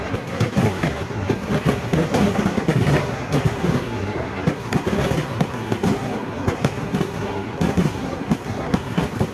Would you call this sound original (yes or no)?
no